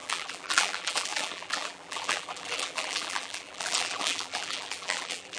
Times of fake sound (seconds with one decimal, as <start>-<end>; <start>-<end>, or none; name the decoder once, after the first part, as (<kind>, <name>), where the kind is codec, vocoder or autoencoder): 0.0-5.4 (vocoder, BigVGAN v2)